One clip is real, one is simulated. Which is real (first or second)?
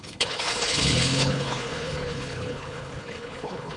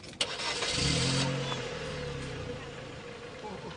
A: second